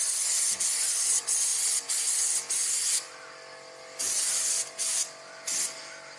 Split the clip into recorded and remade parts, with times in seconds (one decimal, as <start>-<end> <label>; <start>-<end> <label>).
0.0-6.2 recorded